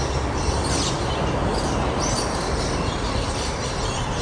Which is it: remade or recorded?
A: recorded